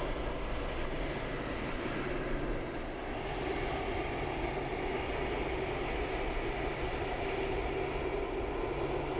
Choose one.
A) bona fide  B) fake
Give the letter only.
A